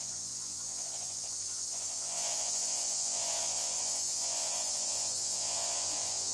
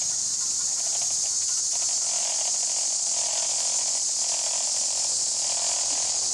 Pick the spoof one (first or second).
first